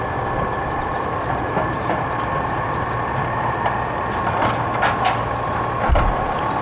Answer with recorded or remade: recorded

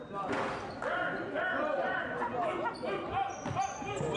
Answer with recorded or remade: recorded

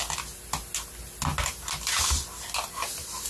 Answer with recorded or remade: recorded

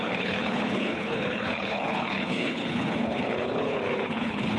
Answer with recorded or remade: remade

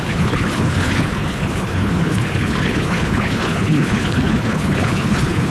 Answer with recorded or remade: remade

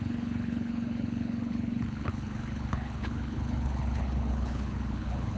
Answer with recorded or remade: remade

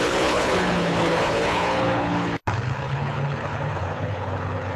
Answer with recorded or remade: remade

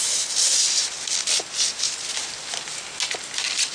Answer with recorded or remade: recorded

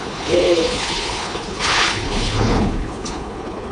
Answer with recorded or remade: remade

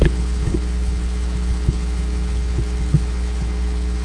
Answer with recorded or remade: remade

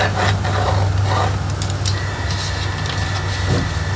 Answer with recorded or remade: recorded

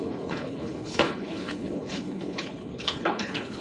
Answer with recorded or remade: remade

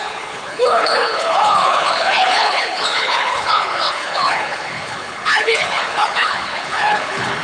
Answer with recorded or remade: remade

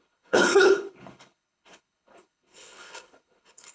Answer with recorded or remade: remade